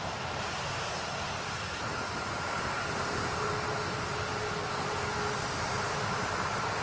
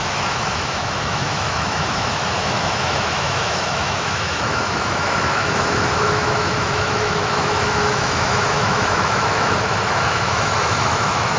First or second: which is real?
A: first